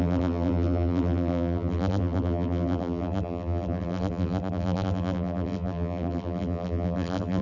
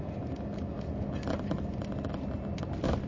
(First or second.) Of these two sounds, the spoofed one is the first